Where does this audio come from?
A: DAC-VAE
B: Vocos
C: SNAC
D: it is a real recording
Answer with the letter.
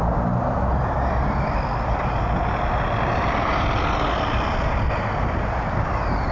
D